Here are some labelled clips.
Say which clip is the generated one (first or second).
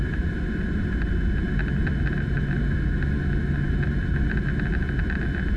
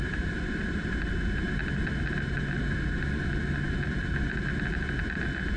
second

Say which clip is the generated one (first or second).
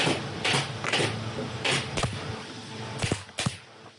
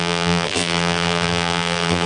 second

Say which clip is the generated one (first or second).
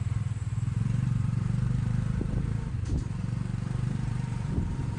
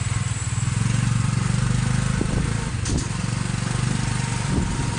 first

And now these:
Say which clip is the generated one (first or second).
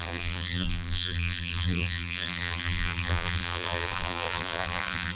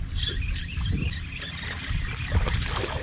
first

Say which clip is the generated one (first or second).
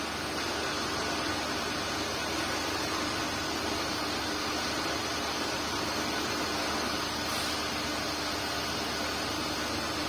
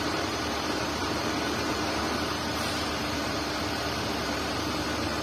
second